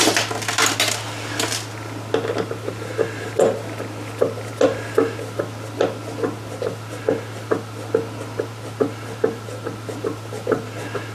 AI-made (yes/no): no